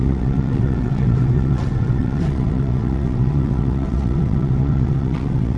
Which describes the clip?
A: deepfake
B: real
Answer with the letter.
A